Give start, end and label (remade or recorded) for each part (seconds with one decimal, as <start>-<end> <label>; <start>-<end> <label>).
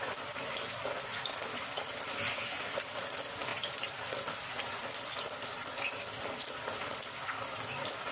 0.0-8.1 recorded